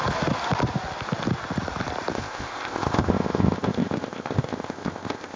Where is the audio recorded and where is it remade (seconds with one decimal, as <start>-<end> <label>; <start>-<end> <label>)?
0.0-2.1 recorded; 2.1-5.4 remade

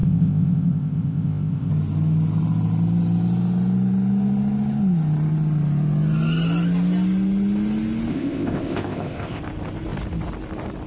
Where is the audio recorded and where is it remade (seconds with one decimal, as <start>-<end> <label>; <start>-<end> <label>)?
0.0-1.7 remade; 1.7-8.1 recorded; 8.1-9.4 remade; 9.4-10.9 recorded

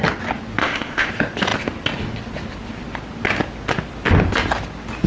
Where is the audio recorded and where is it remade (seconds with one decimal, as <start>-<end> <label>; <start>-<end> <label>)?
0.0-0.6 recorded; 0.6-1.1 remade; 1.1-5.1 recorded

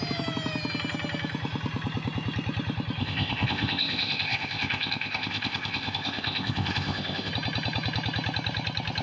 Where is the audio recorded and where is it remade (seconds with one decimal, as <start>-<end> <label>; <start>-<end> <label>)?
0.0-3.0 recorded; 3.0-7.3 remade; 7.3-9.0 recorded